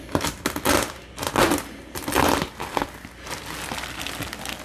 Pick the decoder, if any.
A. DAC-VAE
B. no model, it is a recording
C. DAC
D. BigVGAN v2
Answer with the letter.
B